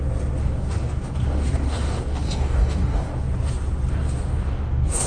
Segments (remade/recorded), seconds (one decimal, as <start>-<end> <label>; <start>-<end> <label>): 0.0-0.4 recorded; 0.4-3.2 remade; 3.2-3.9 recorded; 3.9-5.1 remade